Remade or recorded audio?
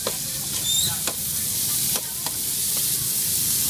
recorded